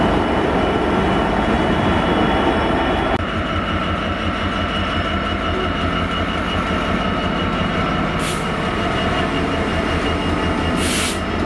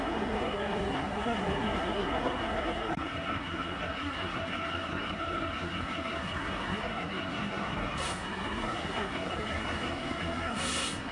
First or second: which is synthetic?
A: second